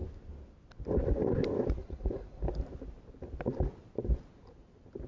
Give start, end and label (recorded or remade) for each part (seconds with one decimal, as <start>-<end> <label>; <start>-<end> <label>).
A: 0.0-1.8 recorded; 1.8-2.4 remade; 2.4-5.1 recorded